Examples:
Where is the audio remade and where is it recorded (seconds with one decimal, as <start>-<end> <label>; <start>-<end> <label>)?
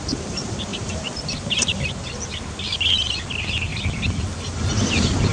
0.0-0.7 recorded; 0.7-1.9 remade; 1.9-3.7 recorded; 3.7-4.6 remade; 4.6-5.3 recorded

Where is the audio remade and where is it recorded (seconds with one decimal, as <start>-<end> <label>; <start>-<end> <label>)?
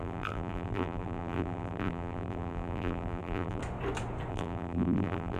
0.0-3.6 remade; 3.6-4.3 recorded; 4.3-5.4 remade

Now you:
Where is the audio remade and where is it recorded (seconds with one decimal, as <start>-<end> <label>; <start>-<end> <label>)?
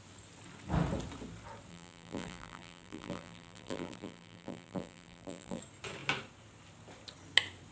0.0-1.7 recorded; 1.7-5.6 remade; 5.6-7.7 recorded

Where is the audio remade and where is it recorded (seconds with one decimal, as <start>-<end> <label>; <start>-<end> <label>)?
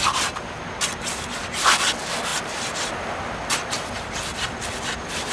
0.0-5.3 recorded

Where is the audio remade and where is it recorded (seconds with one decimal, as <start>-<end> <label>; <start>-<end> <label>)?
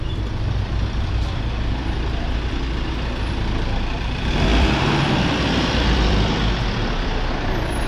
0.0-4.5 recorded; 4.5-6.7 remade; 6.7-7.9 recorded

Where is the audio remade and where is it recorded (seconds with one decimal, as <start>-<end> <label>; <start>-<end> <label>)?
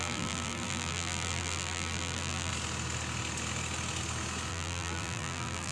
0.0-2.5 remade; 2.5-4.5 recorded; 4.5-5.7 remade